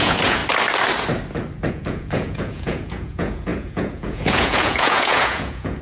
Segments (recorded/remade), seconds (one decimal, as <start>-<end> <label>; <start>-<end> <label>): 0.0-0.4 remade; 0.4-1.7 recorded; 1.7-5.8 remade